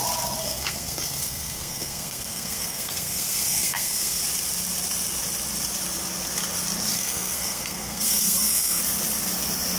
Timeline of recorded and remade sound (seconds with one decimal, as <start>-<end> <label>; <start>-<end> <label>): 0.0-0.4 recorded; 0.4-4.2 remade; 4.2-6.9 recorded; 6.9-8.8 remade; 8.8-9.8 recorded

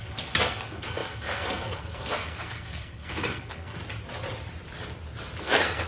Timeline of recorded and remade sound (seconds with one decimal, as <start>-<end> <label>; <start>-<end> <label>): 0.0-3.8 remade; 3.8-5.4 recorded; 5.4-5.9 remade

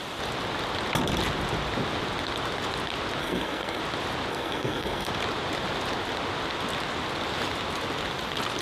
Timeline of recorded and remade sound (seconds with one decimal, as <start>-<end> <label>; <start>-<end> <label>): 0.0-3.2 recorded; 3.2-3.8 remade; 3.8-4.3 recorded; 4.3-5.1 remade; 5.1-8.6 recorded

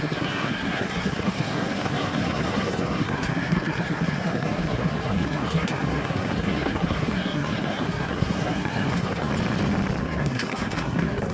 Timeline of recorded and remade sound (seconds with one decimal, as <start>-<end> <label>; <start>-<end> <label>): 0.0-9.3 remade; 9.3-10.0 recorded; 10.0-11.3 remade

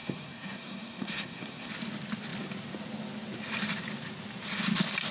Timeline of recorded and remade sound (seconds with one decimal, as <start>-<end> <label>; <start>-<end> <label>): 0.0-1.7 remade; 1.7-5.1 recorded